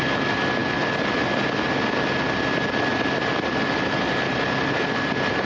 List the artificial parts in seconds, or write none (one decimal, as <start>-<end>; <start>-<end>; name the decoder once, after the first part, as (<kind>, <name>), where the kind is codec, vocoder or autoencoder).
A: none